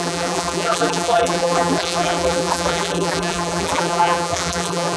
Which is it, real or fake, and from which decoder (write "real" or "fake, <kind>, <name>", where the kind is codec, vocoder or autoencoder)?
fake, vocoder, BigVGAN v2